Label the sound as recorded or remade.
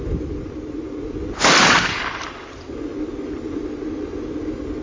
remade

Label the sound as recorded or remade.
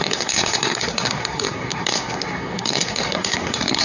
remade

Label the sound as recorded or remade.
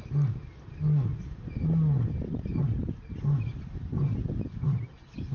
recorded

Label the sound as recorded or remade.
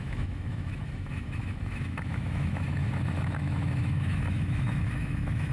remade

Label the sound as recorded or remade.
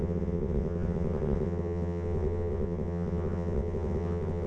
remade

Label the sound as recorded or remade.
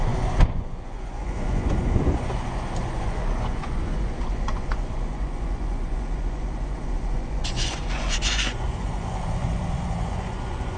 remade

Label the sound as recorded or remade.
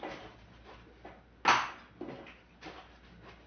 recorded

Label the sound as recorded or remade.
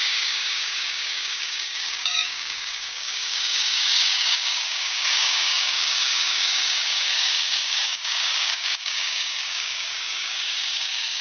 remade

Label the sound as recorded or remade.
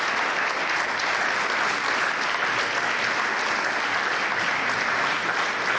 recorded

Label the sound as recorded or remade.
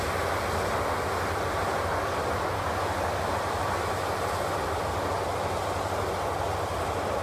recorded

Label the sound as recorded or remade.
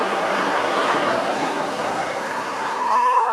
remade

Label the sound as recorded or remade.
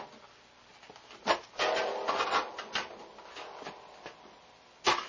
recorded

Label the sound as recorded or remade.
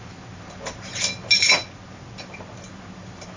recorded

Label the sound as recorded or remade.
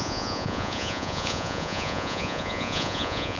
remade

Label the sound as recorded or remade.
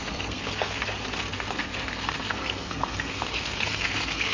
remade